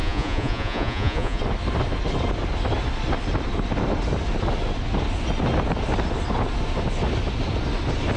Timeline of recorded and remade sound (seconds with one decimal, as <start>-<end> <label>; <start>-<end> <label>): 0.0-1.4 remade; 1.4-8.2 recorded

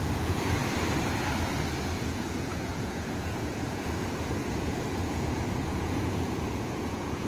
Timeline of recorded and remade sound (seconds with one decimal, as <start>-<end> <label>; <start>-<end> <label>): 0.0-0.6 remade; 0.6-1.9 recorded; 1.9-7.3 remade

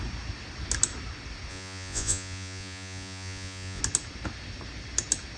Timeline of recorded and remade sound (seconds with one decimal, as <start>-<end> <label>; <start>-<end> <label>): 0.0-1.5 recorded; 1.5-3.8 remade; 3.8-5.4 recorded

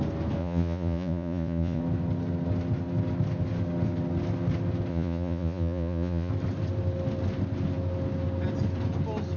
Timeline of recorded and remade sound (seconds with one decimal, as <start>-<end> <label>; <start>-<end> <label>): 0.0-0.4 recorded; 0.4-1.8 remade; 1.8-4.9 recorded; 4.9-6.3 remade; 6.3-9.4 recorded

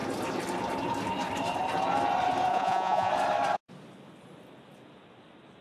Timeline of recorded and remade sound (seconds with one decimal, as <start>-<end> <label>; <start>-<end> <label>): 0.0-2.5 recorded; 2.5-3.1 remade; 3.1-5.6 recorded

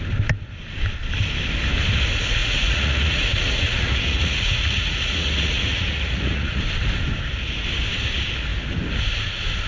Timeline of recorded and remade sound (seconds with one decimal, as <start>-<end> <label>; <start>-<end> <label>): 0.0-2.4 recorded; 2.4-6.6 remade; 6.6-9.7 recorded

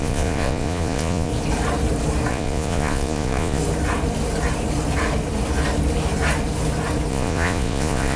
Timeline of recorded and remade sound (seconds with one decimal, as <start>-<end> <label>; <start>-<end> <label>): 0.0-1.3 remade; 1.3-2.3 recorded; 2.3-3.6 remade; 3.6-7.1 recorded; 7.1-8.2 remade

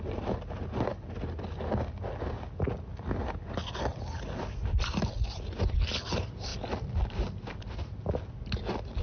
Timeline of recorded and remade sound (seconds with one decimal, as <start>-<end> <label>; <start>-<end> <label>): 0.0-9.0 recorded